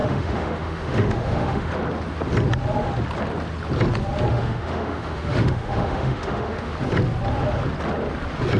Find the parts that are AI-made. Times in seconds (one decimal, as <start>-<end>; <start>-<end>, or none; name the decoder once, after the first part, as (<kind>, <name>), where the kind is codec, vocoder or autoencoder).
0.0-1.7 (autoencoder, DAC-VAE); 4.3-6.7